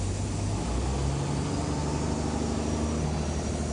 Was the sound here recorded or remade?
recorded